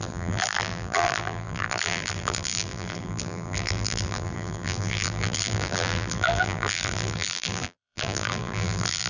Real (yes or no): no